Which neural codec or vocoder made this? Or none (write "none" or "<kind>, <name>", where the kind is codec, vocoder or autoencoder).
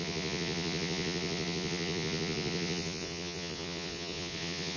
vocoder, Vocos